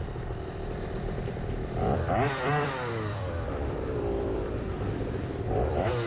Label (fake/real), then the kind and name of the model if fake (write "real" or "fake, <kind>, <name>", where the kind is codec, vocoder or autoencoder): fake, vocoder, BigVGAN v2